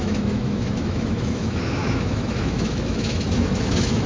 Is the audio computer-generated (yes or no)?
yes